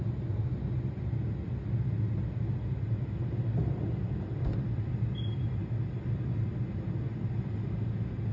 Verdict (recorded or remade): recorded